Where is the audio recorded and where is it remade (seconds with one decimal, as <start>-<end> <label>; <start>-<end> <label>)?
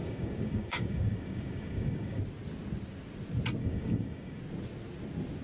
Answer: 0.0-2.2 remade; 2.2-3.6 recorded; 3.6-4.4 remade; 4.4-5.4 recorded